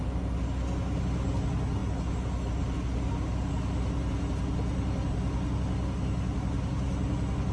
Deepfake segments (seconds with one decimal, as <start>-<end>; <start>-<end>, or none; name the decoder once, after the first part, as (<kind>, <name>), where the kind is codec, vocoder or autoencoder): none